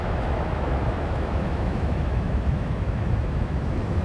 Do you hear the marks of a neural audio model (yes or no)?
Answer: yes